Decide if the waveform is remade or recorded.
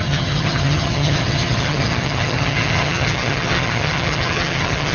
remade